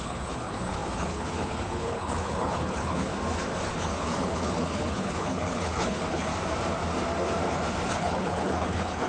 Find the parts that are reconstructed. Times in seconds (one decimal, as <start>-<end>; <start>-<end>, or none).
0.0-3.1; 3.7-6.3; 7.9-9.1